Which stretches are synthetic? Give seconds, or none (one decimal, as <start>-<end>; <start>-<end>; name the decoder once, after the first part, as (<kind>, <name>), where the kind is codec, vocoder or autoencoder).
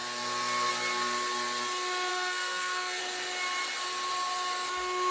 2.1-3.0 (codec, SNAC)